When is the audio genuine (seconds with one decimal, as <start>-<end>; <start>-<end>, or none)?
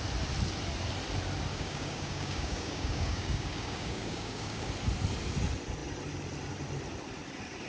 0.0-1.5; 4.7-7.7